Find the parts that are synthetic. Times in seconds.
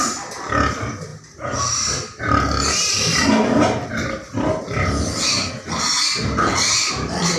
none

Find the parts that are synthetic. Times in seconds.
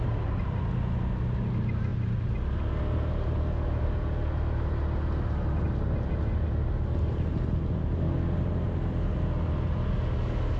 none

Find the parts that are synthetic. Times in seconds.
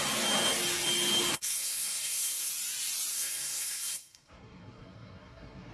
1.3-2.5; 3.1-5.7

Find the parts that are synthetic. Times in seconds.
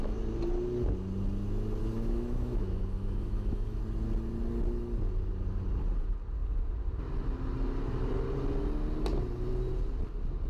1.8-3.8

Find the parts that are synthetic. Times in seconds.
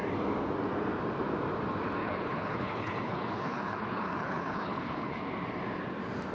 2.0-5.2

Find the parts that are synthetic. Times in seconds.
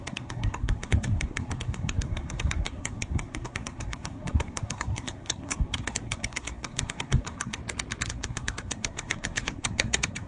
0.0-7.6; 8.1-10.3